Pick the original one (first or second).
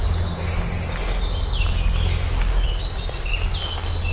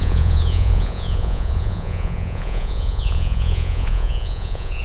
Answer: first